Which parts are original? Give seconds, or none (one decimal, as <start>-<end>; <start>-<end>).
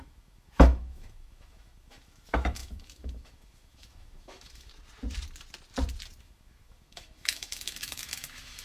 4.7-6.2